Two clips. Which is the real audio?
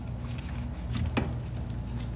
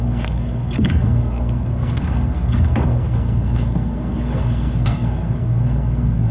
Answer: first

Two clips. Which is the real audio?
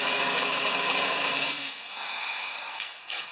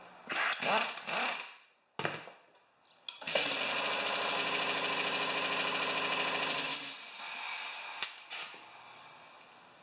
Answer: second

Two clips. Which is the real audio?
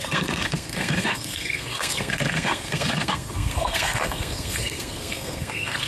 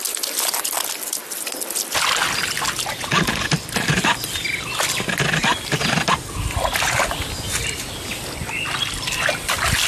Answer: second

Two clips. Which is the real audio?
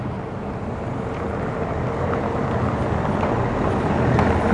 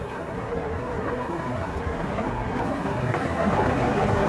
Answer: first